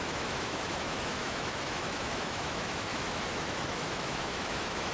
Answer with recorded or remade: remade